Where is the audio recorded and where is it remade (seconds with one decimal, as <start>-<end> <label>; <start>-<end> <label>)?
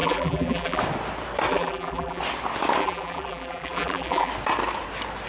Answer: 0.0-0.8 remade; 0.8-1.5 recorded; 1.5-2.2 remade; 2.2-2.8 recorded; 2.8-4.3 remade; 4.3-5.3 recorded